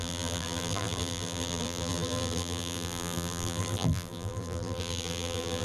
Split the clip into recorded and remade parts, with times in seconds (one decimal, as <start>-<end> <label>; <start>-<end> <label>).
0.0-5.6 remade